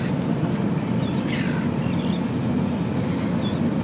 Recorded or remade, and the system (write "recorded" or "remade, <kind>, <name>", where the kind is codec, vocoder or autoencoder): recorded